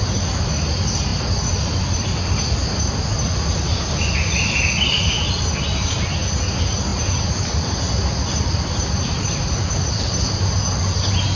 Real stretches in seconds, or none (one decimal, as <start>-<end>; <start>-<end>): 0.0-11.4